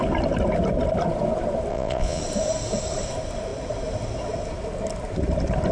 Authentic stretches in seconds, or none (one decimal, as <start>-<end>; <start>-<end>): 0.0-1.7; 2.2-5.7